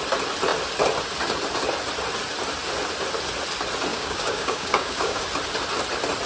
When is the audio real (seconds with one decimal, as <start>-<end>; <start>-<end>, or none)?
0.0-3.9; 5.2-6.3